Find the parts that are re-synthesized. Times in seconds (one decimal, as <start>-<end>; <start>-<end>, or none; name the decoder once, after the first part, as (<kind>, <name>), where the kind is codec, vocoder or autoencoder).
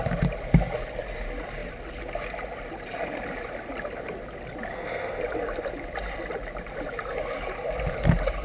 4.7-5.2 (codec, SNAC)